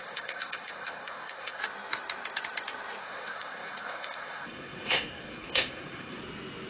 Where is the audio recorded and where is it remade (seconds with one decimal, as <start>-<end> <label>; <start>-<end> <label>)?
0.0-1.6 remade; 1.6-3.0 recorded; 3.0-6.2 remade; 6.2-6.7 recorded